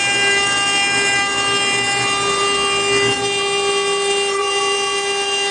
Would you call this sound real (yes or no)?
yes